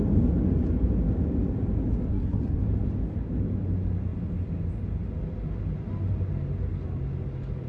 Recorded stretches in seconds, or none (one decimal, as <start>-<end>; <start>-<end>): 0.0-2.1; 2.6-7.7